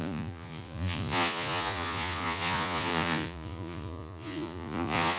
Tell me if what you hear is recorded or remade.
remade